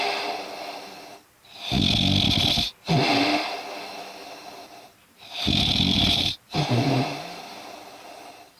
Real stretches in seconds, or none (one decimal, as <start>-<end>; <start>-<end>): 0.0-4.2; 7.6-8.6